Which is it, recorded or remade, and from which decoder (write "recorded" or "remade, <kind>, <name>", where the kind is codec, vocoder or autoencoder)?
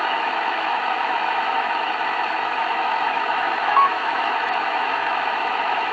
remade, autoencoder, DAC-VAE